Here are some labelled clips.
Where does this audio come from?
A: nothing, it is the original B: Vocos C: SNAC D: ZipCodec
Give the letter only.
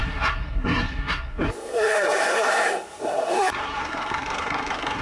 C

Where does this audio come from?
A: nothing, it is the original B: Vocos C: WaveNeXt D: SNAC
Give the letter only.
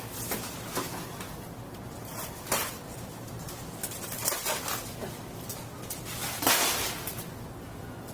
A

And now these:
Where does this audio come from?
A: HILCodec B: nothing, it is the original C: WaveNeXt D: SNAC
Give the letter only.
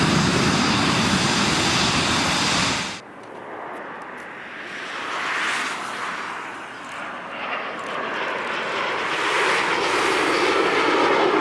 B